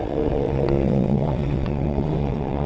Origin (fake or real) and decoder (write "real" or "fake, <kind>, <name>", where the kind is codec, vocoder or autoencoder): fake, vocoder, WaveNeXt